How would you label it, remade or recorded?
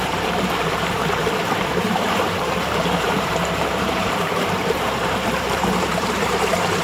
remade